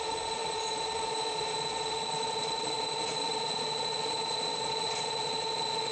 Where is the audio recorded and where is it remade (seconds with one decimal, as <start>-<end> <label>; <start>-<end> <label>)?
0.0-5.9 remade